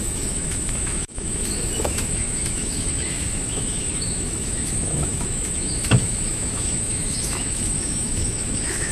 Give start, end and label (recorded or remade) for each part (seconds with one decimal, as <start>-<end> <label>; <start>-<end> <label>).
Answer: 0.0-8.9 remade